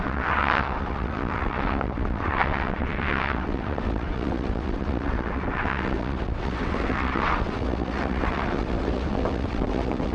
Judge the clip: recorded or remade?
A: remade